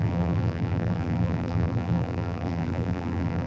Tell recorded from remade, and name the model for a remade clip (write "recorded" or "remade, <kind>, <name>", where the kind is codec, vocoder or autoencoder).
remade, vocoder, BigVGAN v2